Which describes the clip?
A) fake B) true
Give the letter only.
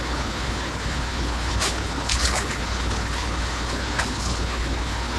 A